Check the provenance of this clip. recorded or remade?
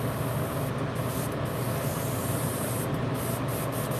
recorded